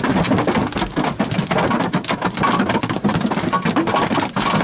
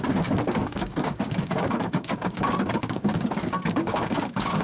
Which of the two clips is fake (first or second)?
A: second